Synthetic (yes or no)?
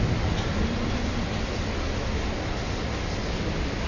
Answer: no